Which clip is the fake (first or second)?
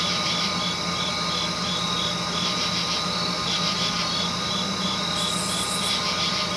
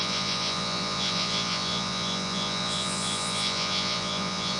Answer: second